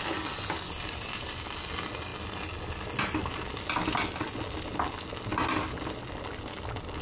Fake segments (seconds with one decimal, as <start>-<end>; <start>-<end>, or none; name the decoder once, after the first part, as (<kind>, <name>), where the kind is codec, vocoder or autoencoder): none